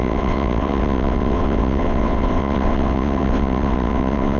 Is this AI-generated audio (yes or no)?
yes